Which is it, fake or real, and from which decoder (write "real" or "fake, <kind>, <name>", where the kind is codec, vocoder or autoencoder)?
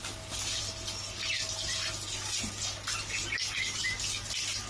real